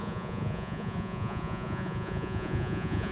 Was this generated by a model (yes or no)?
yes